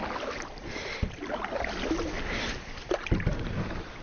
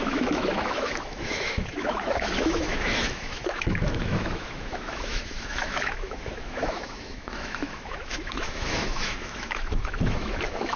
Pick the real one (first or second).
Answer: first